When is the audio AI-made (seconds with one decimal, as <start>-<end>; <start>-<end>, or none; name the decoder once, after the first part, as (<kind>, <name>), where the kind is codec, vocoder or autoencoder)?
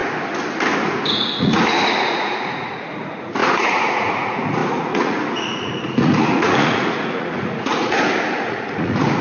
1.1-9.2 (vocoder, Vocos)